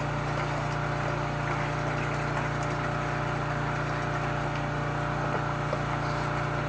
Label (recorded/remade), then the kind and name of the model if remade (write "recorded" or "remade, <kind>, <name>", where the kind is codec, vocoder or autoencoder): recorded